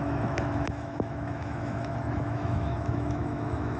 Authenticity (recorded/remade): remade